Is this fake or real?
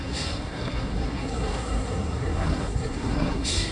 fake